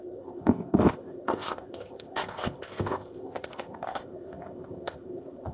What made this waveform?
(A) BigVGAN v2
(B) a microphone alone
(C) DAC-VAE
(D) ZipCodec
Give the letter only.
D